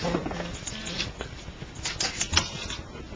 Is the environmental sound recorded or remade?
recorded